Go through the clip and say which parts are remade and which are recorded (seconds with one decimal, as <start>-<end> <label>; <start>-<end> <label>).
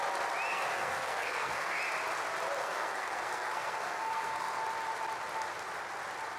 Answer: 0.0-0.5 recorded; 0.5-1.8 remade; 1.8-2.6 recorded; 2.6-4.6 remade; 4.6-6.4 recorded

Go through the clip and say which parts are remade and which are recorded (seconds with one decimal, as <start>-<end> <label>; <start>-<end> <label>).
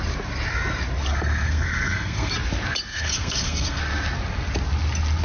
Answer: 0.0-1.1 recorded; 1.1-2.3 remade; 2.3-2.9 recorded; 2.9-3.8 remade; 3.8-5.2 recorded